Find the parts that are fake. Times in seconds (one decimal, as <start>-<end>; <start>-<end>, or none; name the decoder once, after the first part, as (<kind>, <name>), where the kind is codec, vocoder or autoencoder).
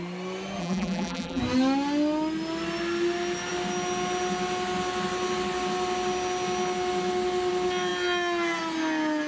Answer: 0.6-1.4 (vocoder, BigVGAN v2)